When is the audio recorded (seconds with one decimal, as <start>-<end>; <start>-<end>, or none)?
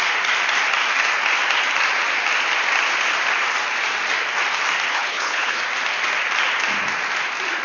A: 0.0-4.9; 5.6-7.6